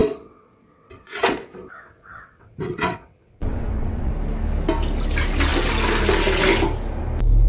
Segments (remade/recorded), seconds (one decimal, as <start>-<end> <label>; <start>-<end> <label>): 0.0-4.1 remade; 4.1-7.5 recorded